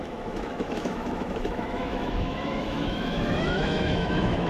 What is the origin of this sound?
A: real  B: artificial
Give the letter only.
B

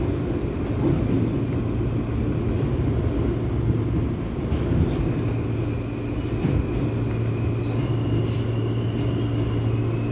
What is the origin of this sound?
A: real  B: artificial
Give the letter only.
A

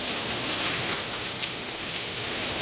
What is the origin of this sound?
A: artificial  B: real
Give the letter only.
A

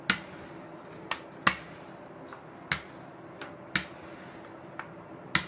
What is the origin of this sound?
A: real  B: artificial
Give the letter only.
A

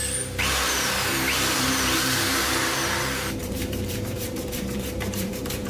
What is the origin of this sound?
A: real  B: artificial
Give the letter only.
B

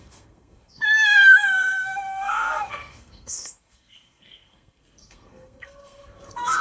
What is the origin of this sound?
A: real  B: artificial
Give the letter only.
B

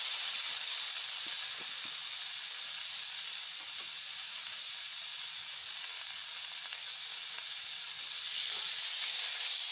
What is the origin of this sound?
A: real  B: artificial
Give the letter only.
A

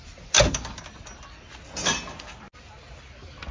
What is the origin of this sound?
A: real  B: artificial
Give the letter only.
A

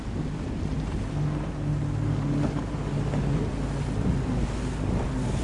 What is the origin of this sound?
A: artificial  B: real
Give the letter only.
B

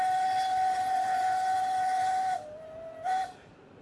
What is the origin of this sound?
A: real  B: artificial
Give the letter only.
A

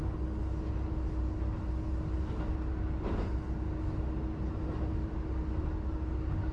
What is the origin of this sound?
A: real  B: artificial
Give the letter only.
A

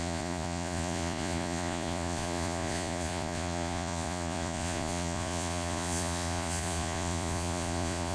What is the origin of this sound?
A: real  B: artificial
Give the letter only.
B